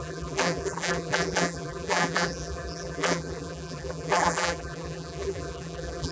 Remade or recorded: remade